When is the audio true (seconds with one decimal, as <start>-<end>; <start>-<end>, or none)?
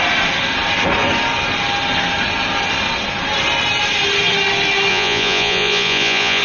0.0-4.9